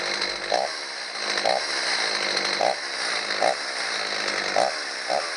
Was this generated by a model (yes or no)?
no